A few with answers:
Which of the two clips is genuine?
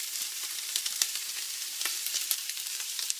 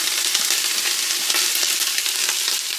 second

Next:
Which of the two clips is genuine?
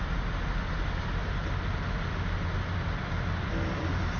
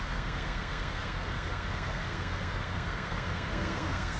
first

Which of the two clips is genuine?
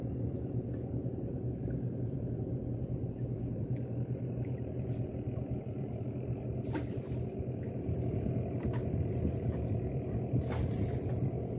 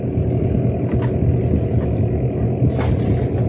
second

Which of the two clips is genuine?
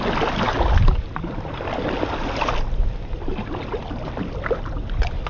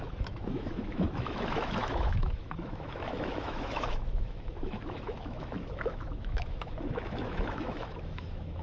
first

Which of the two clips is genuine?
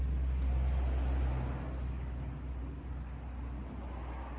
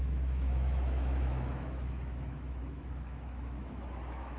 first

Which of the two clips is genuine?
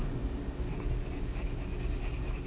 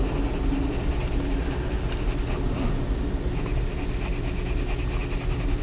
second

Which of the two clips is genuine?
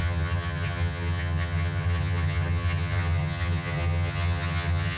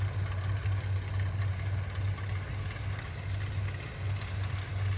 second